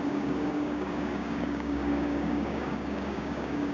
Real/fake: fake